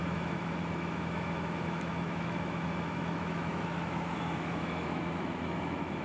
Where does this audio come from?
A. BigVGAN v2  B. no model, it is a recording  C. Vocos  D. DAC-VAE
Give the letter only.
D